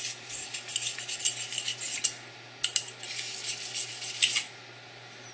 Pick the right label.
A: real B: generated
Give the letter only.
A